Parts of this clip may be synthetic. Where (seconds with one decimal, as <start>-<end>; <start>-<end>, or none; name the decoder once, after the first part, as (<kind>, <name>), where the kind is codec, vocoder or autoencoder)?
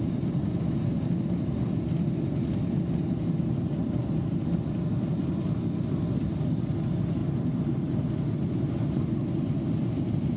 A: none